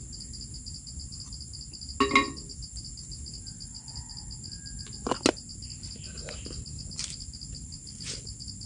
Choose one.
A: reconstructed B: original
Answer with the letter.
B